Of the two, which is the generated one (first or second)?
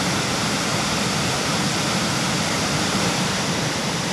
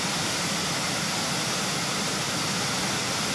first